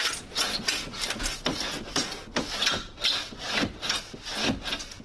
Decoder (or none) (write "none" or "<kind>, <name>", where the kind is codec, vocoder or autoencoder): none